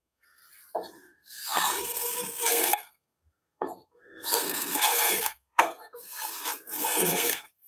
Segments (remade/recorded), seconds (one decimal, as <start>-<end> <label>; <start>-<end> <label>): 0.0-0.4 remade; 0.4-1.0 recorded; 1.0-7.7 remade

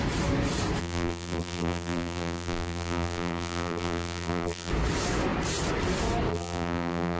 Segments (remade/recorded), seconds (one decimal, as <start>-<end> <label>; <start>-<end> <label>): 0.0-0.8 recorded; 0.8-4.7 remade; 4.7-6.3 recorded; 6.3-7.2 remade